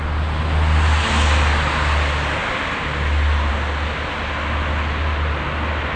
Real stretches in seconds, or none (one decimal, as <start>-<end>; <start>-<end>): 0.0-6.0